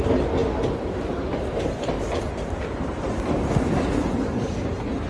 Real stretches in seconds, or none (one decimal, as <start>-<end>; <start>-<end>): 0.0-5.1